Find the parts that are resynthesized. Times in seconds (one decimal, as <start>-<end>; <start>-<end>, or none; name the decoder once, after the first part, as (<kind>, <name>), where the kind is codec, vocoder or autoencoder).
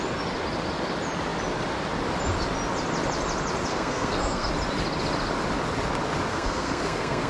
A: 3.7-4.5 (codec, SNAC); 6.3-7.3